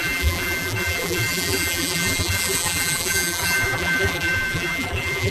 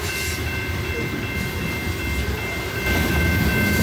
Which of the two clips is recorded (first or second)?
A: second